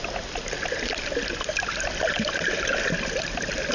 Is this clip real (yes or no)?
yes